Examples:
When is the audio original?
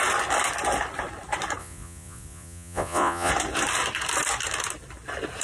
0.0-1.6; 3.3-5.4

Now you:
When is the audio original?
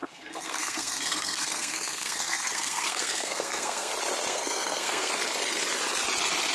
3.9-4.3; 5.1-6.5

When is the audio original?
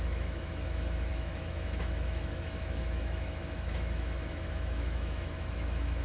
none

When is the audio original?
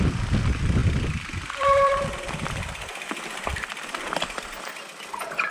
0.0-0.8; 4.1-5.5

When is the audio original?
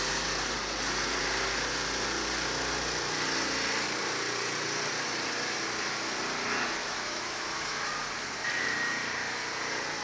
0.0-6.8; 7.9-10.0